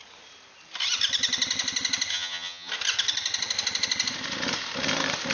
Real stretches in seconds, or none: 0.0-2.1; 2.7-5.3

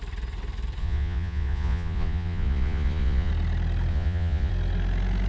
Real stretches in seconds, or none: 0.0-0.8; 3.3-3.9; 4.5-5.3